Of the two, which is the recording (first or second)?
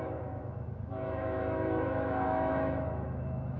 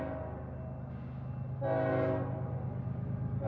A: second